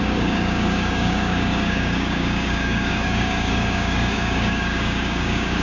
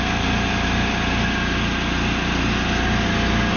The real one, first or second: second